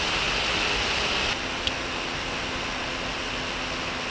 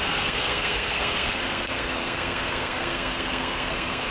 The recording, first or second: first